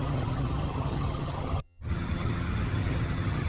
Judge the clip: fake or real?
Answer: fake